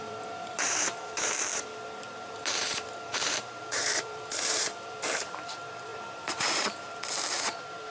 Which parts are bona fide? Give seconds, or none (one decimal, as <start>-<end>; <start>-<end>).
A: none